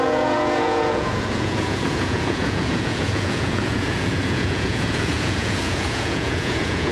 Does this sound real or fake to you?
fake